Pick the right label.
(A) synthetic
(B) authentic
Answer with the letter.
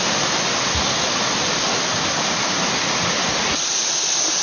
B